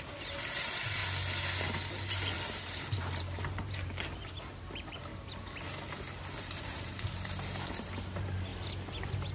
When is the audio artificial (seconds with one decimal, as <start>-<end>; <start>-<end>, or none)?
0.0-1.0; 1.9-5.1; 6.4-8.5